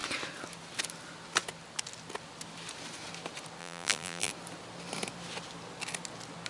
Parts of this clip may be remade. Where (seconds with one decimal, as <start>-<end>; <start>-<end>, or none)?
3.6-4.3